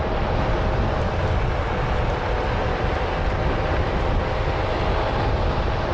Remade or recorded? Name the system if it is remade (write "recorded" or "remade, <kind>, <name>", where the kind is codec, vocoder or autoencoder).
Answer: recorded